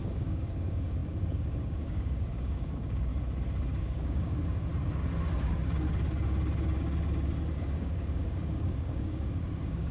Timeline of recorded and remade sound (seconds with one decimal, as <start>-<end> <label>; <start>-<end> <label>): 0.0-3.1 remade; 3.1-3.8 recorded; 3.8-4.7 remade; 4.7-7.5 recorded; 7.5-9.9 remade